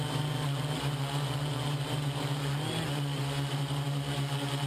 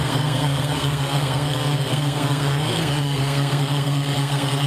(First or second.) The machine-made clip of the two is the second